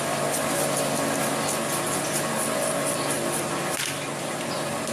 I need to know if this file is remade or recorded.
recorded